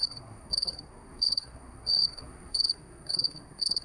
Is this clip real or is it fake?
fake